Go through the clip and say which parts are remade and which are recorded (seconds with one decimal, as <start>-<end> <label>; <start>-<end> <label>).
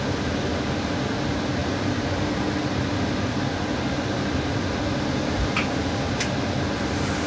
0.0-7.3 recorded